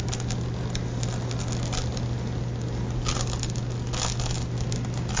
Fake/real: real